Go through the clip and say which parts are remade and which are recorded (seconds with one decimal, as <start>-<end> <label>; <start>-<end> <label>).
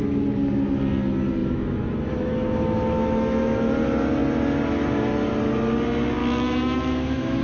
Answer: 0.0-1.4 recorded; 1.4-3.7 remade; 3.7-6.2 recorded; 6.2-7.4 remade